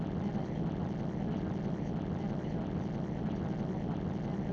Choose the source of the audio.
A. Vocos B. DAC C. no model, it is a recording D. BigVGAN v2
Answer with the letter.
C